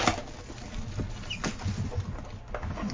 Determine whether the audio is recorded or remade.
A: recorded